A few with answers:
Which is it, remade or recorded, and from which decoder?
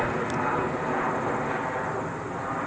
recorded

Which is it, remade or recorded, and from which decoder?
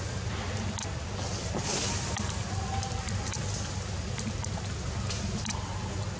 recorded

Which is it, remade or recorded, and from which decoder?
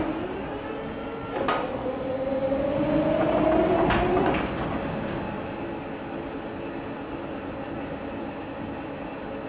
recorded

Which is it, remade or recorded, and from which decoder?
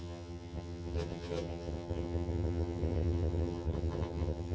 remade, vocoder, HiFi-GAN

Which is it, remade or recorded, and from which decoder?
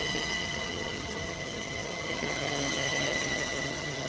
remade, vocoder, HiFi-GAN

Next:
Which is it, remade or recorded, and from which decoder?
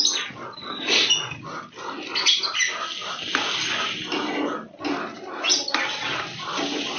recorded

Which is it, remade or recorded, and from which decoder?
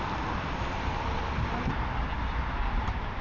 recorded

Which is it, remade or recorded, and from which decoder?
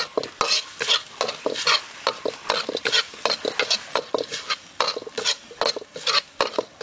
recorded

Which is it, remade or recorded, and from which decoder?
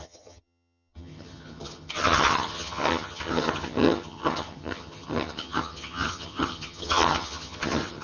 remade, vocoder, HiFi-GAN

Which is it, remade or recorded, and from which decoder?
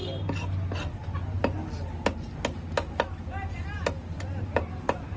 recorded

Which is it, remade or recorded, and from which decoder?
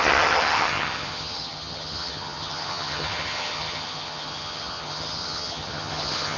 remade, vocoder, HiFi-GAN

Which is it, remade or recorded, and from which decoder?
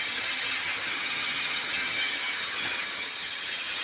remade, vocoder, HiFi-GAN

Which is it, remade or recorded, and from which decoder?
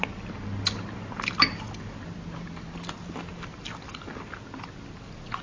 recorded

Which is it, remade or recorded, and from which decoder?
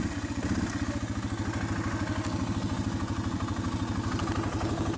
recorded